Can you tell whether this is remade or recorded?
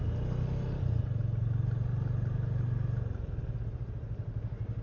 recorded